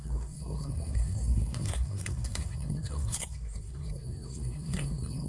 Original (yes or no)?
no